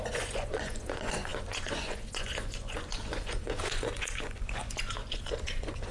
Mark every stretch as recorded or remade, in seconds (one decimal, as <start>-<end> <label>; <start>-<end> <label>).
0.0-5.9 remade